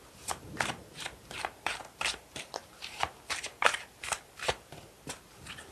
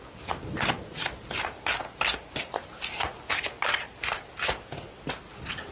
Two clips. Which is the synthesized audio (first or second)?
first